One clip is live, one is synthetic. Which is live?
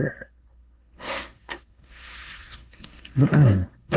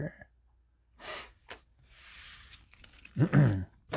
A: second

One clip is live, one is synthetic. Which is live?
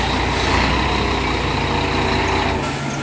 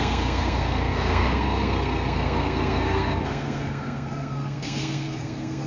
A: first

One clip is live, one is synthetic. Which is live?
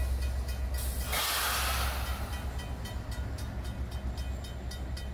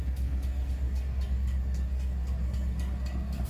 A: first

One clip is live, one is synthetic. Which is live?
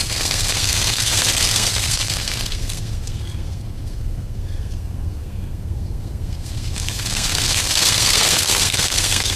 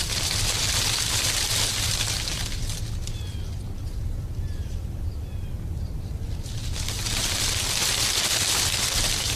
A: second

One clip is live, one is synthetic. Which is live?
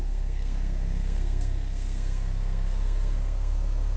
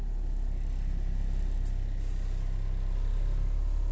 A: second